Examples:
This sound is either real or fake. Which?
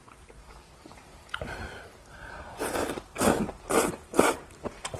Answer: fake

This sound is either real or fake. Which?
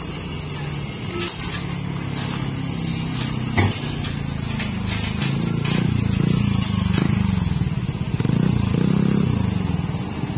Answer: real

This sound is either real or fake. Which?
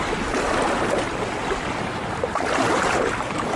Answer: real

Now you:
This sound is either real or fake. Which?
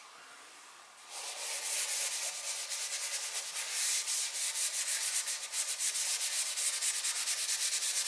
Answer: real